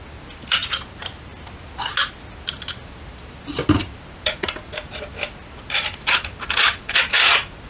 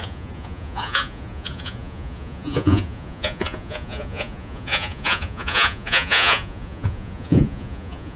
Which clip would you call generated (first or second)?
second